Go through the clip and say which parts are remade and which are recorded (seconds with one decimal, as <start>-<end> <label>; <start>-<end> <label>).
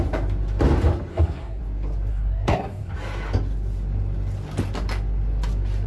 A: 0.0-1.1 recorded; 1.1-1.6 remade; 1.6-2.1 recorded; 2.1-2.9 remade; 2.9-5.9 recorded